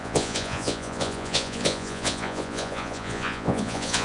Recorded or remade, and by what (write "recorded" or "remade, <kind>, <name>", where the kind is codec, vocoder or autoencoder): remade, vocoder, Vocos